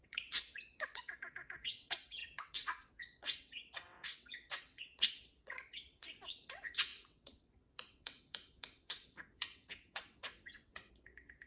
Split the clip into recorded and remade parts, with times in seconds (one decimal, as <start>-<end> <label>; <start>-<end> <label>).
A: 0.0-11.5 remade